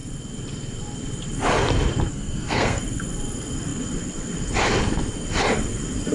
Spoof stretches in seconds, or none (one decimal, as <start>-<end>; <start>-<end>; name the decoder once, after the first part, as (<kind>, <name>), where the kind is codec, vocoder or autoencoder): 2.1-2.8 (codec, SNAC)

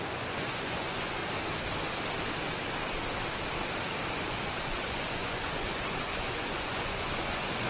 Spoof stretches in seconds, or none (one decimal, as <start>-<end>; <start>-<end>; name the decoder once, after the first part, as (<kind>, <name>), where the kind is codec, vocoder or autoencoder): 0.0-1.2 (vocoder, Vocos); 4.1-7.7

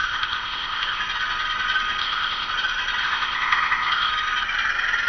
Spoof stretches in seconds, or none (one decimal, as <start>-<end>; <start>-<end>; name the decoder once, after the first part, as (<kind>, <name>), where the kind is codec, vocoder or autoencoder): 0.0-1.0 (codec, ZipCodec); 2.0-2.5; 3.0-4.1

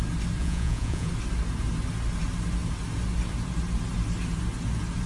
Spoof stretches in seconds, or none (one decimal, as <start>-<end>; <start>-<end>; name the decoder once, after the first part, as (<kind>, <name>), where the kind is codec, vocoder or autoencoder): 0.4-1.1 (vocoder, Vocos)

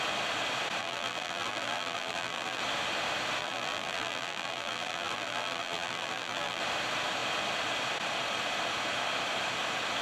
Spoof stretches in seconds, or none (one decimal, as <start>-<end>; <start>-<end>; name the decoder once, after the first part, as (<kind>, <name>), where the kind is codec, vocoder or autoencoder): 0.8-2.6 (vocoder, BigVGAN v2); 3.4-6.6

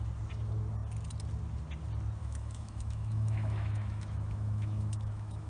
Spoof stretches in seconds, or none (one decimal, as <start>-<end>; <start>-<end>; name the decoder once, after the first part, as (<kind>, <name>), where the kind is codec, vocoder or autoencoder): 2.2-5.5 (autoencoder, DAC-VAE)

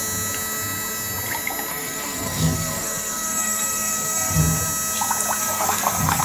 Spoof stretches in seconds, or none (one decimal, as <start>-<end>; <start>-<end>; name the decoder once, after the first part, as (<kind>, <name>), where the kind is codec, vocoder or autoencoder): 1.7-4.4 (codec, SNAC); 5.4-6.2

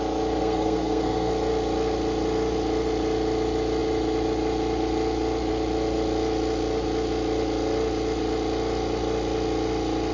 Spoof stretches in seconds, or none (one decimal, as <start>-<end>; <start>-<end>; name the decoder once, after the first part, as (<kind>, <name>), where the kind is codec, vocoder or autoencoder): 0.4-1.3 (codec, SNAC)